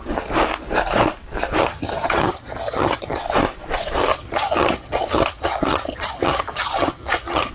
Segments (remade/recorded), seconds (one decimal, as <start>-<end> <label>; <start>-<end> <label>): 0.0-1.6 recorded; 1.6-3.2 remade; 3.2-4.1 recorded; 4.1-7.5 remade